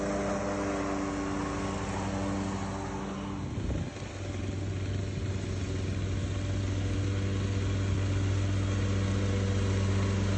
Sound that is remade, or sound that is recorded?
recorded